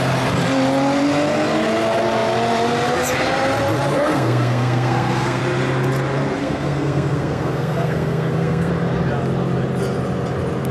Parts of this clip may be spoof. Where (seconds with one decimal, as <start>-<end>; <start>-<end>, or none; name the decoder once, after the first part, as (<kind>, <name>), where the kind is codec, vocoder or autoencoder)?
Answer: 4.1-5.4 (codec, SNAC); 6.4-8.7